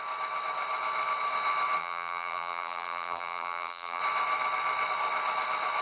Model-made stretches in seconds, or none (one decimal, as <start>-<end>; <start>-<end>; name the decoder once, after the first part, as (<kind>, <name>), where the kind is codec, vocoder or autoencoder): 1.8-4.0 (vocoder, BigVGAN v2)